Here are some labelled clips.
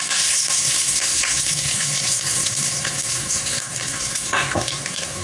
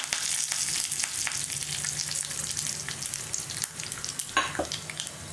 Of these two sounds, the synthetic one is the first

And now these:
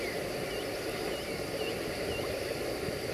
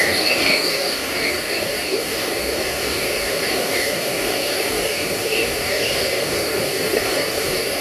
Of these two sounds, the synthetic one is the second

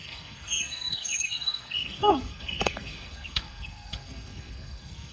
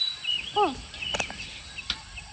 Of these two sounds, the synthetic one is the first